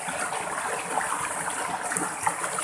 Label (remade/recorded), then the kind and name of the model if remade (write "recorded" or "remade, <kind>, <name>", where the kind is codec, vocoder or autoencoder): recorded